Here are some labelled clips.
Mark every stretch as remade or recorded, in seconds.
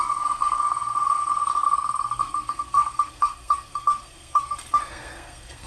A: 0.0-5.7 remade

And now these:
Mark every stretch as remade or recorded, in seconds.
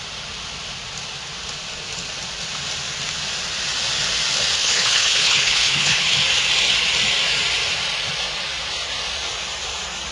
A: 0.0-4.6 recorded; 4.6-6.1 remade; 6.1-10.1 recorded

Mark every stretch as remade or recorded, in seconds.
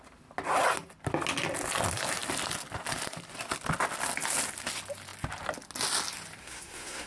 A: 0.0-6.4 recorded; 6.4-7.1 remade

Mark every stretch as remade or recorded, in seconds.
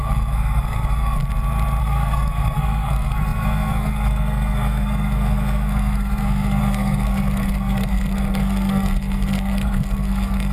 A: 0.0-1.2 remade; 1.2-1.8 recorded; 1.8-10.5 remade